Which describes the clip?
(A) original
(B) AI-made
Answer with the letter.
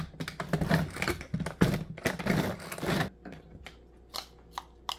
A